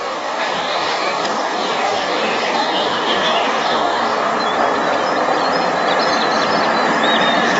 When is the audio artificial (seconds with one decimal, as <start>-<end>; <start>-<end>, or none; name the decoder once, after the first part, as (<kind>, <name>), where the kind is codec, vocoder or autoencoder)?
0.0-4.3 (codec, DAC)